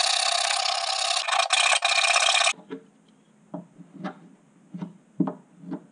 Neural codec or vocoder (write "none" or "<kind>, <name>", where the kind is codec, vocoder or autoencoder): none